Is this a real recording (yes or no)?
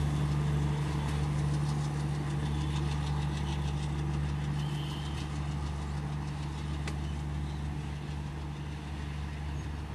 yes